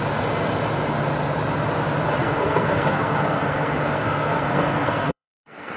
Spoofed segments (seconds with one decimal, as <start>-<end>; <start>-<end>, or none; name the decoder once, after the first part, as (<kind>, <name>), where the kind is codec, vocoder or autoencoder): 2.2-5.8 (codec, SNAC)